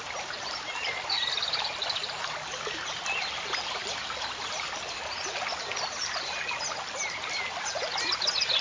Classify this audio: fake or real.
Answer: real